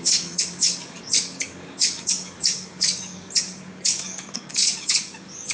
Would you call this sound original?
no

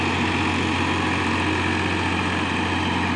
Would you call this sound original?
yes